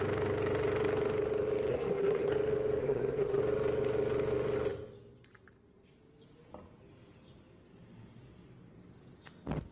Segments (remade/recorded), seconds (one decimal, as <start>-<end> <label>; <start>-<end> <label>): 0.0-1.7 recorded; 1.7-2.3 remade; 2.3-2.8 recorded; 2.8-3.4 remade; 3.4-9.7 recorded